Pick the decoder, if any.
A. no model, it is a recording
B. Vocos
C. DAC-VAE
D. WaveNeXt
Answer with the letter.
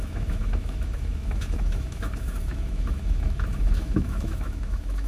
C